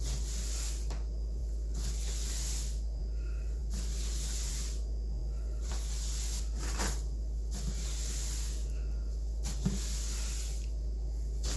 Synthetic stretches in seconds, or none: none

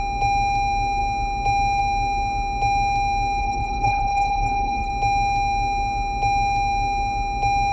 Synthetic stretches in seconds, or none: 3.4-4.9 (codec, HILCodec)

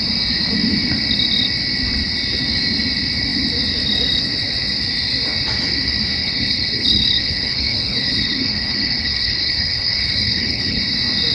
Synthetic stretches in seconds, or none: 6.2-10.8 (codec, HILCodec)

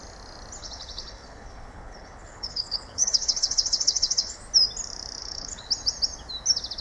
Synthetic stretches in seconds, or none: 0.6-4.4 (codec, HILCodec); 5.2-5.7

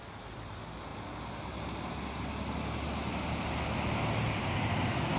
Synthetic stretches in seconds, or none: none